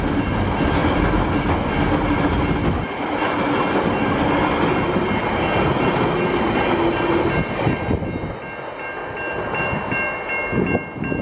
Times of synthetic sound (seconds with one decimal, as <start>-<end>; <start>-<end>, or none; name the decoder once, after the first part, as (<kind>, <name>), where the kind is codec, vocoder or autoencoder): 0.8-1.5 (vocoder, BigVGAN v2); 9.3-9.8